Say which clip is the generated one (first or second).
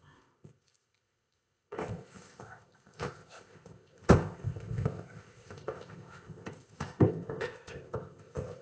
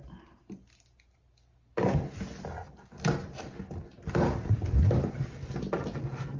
first